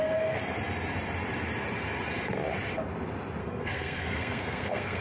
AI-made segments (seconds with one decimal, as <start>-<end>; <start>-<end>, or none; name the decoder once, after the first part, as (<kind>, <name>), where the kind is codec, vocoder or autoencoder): 0.0-0.4 (codec, SNAC); 3.4-5.0

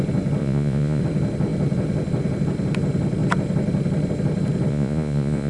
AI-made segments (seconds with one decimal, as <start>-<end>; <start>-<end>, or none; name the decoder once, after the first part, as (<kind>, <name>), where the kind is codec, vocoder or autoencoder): 0.4-1.0 (vocoder, Vocos); 4.7-5.5

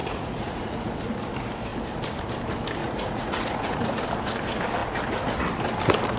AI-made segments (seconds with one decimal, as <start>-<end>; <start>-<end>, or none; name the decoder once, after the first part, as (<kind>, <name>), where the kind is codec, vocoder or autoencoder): 0.0-0.9 (vocoder, Vocos); 2.8-4.0

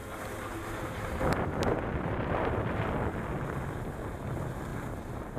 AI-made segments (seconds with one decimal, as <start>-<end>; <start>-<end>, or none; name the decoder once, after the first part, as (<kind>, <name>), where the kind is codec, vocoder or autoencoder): 0.0-2.9 (vocoder, BigVGAN v2); 4.7-5.4